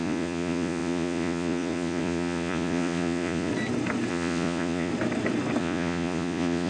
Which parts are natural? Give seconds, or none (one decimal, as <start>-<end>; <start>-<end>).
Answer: 3.5-4.1; 4.9-5.6